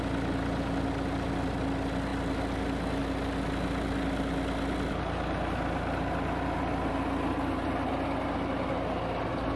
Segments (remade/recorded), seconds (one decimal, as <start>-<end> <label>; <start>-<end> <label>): 0.0-9.6 recorded